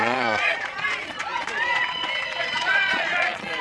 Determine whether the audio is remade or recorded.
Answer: remade